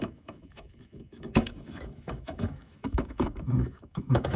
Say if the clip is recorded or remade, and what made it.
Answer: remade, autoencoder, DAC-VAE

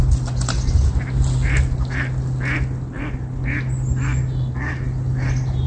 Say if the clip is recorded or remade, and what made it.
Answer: recorded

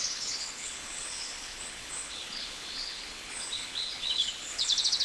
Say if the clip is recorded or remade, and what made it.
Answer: remade, codec, HILCodec